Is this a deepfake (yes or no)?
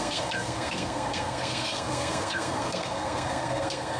yes